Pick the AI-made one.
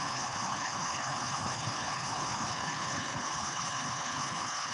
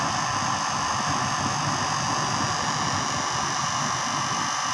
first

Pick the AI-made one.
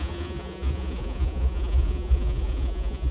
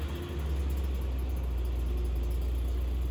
first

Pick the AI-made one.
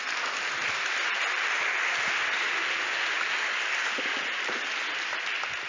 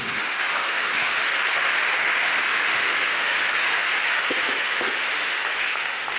second